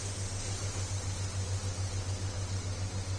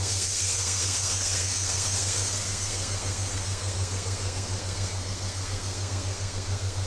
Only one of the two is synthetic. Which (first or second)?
second